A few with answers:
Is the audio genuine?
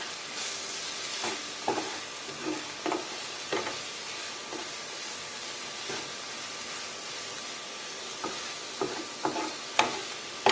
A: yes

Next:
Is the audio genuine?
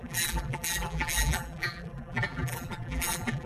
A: no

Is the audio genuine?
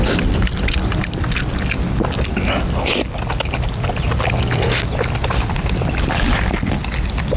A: yes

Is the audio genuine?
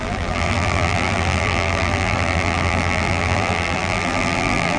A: no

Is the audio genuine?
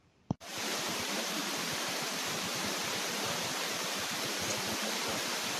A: no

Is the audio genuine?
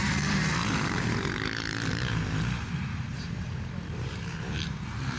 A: no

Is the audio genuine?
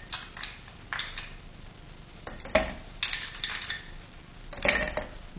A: yes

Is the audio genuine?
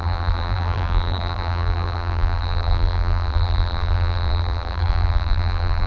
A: no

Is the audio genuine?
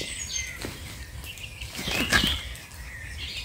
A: yes